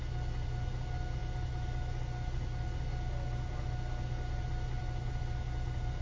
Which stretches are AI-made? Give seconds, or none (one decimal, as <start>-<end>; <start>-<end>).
none